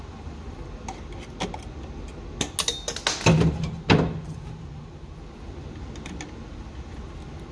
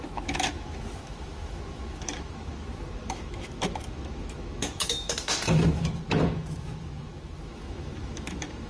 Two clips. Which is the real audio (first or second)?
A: first